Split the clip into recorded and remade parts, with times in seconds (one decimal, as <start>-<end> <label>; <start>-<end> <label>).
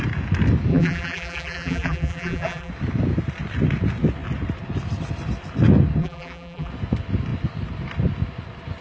0.0-0.7 recorded; 0.7-2.7 remade; 2.7-6.0 recorded; 6.0-6.7 remade; 6.7-8.8 recorded